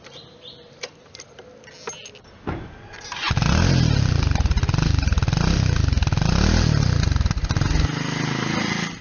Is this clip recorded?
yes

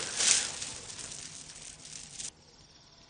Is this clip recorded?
no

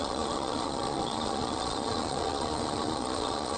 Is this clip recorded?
no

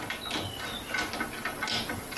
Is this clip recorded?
yes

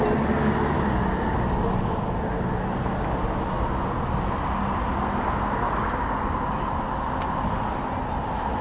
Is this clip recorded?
yes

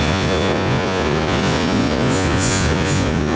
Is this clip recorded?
no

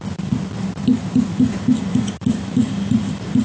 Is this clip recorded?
yes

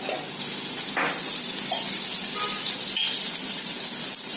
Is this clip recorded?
yes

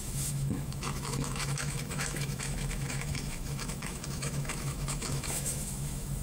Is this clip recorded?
no